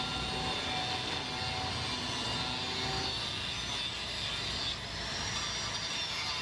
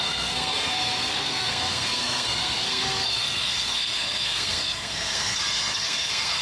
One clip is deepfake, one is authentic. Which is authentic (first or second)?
first